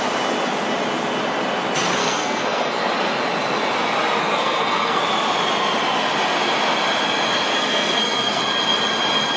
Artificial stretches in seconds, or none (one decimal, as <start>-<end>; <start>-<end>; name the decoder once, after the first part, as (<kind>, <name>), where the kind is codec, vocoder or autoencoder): 2.0-2.9 (codec, SNAC); 4.2-5.0; 7.5-8.4